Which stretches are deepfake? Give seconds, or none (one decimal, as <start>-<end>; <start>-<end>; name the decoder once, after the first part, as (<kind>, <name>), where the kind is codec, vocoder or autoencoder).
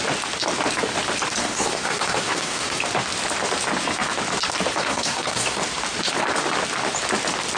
1.4-2.8 (codec, SNAC); 4.8-5.6